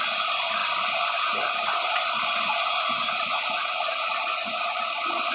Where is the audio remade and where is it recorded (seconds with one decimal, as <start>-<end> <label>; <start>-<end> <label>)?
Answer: 0.0-3.3 recorded; 3.3-4.6 remade; 4.6-5.3 recorded